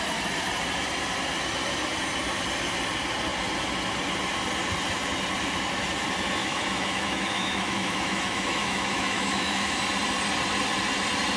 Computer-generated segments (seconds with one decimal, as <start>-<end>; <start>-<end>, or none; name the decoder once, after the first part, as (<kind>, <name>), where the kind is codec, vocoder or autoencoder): 6.4-9.8 (autoencoder, DAC-VAE)